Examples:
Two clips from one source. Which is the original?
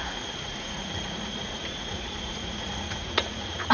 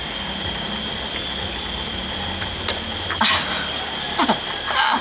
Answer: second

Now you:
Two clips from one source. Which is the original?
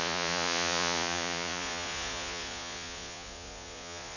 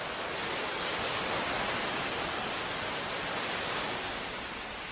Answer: second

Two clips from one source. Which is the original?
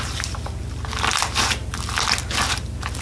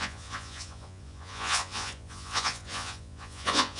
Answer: first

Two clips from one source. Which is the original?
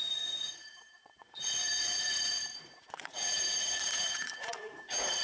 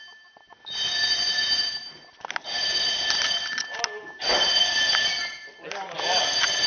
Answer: second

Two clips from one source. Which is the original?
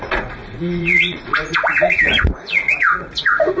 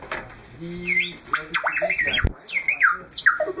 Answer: second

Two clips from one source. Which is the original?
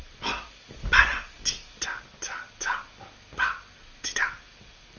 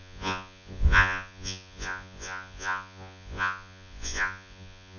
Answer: first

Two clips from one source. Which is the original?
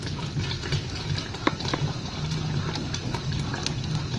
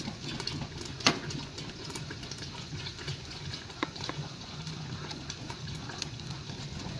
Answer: first